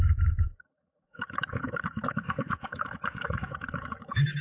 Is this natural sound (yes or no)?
no